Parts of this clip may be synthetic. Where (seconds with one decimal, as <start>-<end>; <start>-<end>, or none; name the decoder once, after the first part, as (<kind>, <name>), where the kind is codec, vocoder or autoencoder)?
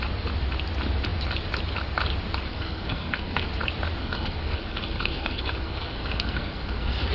2.5-3.5 (codec, SNAC); 4.0-7.1